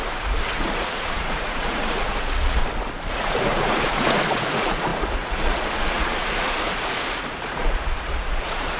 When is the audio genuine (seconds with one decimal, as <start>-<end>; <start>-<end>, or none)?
2.6-3.1